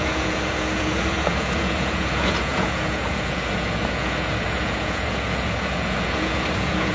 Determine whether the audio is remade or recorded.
remade